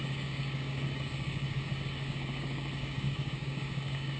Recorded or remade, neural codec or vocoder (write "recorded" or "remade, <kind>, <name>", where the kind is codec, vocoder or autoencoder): remade, codec, DAC